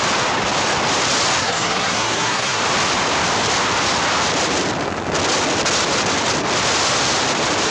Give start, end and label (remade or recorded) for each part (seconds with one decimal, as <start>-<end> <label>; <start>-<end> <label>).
0.0-1.4 recorded; 1.4-2.6 remade; 2.6-7.7 recorded